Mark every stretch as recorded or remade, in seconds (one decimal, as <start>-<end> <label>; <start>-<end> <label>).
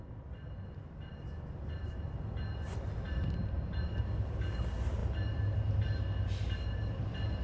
0.0-7.4 recorded